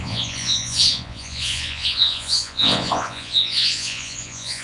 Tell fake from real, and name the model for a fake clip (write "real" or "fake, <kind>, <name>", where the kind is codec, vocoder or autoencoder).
fake, vocoder, Vocos